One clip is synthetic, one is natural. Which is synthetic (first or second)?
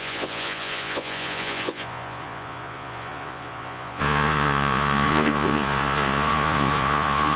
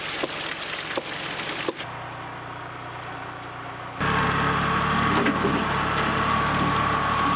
first